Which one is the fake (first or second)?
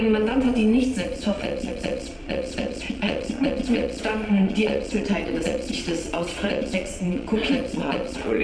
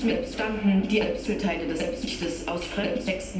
first